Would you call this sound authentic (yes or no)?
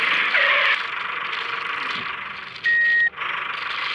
yes